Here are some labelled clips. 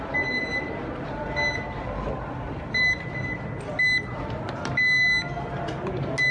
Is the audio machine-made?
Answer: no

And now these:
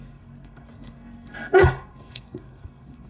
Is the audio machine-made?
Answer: yes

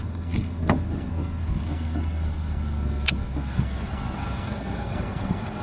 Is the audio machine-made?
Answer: yes